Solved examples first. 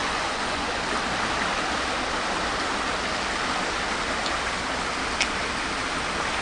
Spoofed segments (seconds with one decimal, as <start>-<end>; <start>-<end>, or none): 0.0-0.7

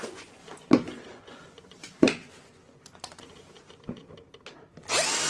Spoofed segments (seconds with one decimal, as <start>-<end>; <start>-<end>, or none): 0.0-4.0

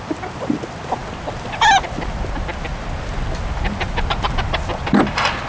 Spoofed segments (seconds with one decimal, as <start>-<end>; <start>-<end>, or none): none

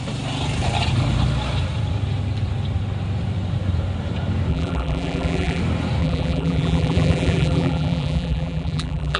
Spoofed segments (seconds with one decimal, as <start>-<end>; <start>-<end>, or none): 4.5-5.6; 6.0-9.2

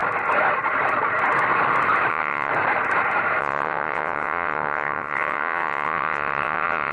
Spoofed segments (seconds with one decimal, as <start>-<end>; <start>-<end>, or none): 2.1-2.5; 3.4-6.9

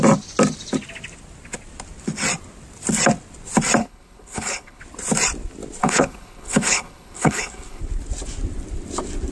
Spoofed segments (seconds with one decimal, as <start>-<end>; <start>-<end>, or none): 3.8-4.8; 5.8-7.8